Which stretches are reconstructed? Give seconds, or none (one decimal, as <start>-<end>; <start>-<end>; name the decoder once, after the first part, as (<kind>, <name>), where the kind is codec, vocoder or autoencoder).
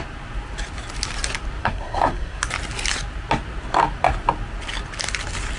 1.6-2.4 (codec, SNAC)